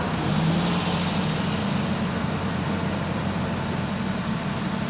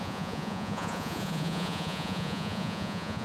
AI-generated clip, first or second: second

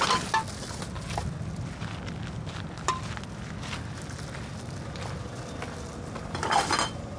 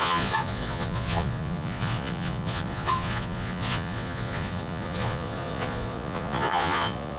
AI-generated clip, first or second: second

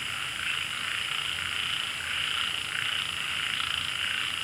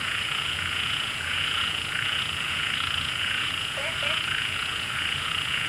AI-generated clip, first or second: second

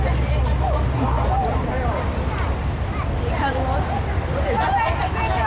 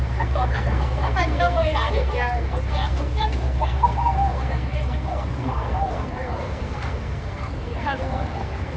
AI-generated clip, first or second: second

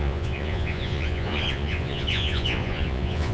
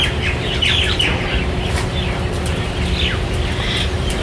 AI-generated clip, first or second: first